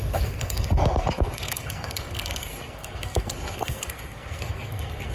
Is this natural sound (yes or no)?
no